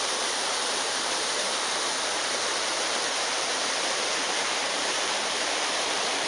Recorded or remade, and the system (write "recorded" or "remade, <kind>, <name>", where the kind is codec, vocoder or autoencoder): remade, vocoder, BigVGAN v2